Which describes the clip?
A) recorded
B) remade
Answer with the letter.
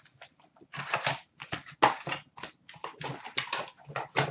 A